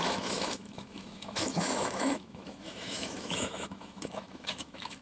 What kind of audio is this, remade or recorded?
remade